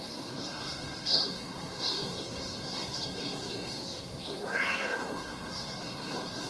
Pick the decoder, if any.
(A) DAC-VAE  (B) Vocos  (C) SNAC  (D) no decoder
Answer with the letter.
C